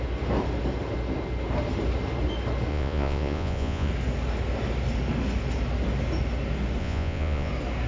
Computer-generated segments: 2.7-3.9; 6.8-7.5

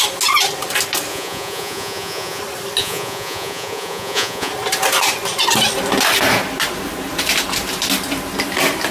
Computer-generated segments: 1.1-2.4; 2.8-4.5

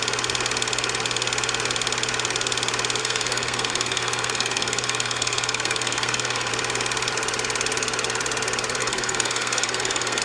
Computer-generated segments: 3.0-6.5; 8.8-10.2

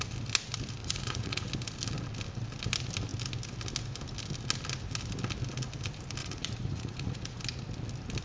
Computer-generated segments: 0.8-1.5; 6.2-7.4

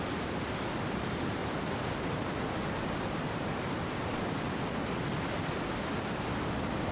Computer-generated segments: 1.4-4.7

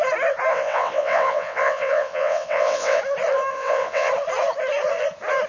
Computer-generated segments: 0.5-3.0; 3.5-4.1

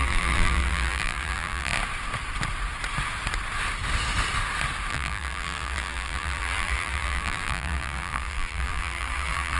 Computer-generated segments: 0.0-1.7; 4.9-9.6